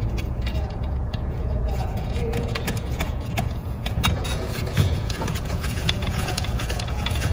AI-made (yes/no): yes